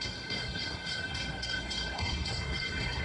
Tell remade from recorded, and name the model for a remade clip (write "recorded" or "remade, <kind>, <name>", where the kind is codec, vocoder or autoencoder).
remade, codec, SNAC